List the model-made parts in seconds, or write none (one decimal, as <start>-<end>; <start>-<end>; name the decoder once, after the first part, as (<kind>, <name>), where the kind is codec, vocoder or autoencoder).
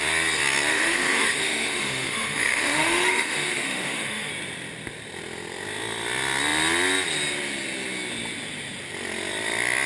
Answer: 0.7-4.3 (autoencoder, DAC-VAE)